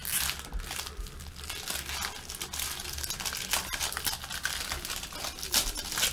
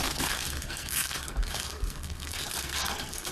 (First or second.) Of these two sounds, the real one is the first